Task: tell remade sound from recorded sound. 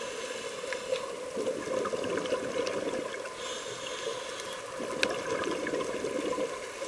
recorded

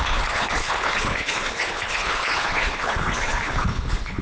remade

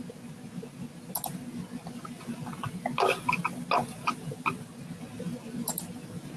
recorded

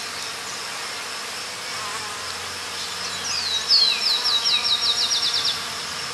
recorded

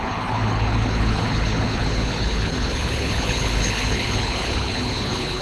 remade